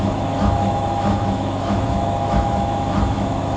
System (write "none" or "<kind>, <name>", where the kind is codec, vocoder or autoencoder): autoencoder, DAC-VAE